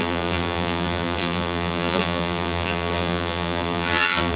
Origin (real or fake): fake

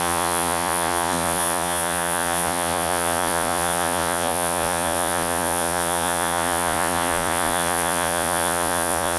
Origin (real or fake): fake